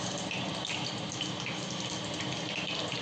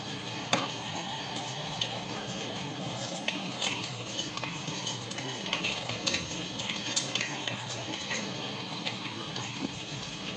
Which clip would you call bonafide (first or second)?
first